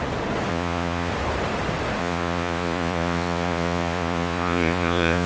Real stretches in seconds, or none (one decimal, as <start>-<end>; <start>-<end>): 0.0-0.5; 1.1-2.0